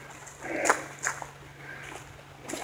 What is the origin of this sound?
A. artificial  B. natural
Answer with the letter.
B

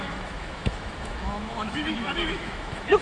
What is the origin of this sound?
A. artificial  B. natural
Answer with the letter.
A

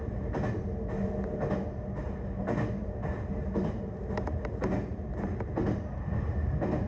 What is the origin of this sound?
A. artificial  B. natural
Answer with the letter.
B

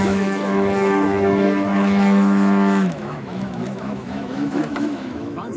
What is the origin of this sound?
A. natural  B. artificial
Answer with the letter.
B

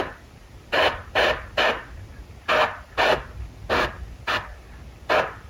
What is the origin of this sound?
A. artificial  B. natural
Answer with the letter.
B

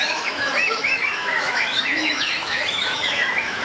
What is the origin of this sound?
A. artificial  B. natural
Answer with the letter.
A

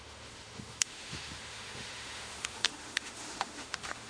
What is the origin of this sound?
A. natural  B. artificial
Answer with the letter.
B